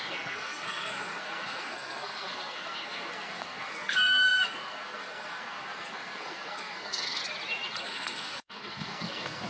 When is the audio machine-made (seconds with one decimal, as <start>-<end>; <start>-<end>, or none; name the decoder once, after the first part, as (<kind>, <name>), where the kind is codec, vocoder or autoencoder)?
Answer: 0.0-7.2 (codec, SNAC); 7.8-9.5